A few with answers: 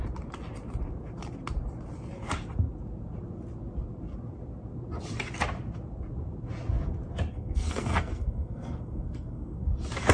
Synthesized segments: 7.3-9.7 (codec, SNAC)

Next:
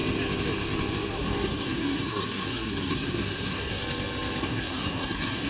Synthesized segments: 1.1-3.8 (codec, SNAC); 4.4-5.5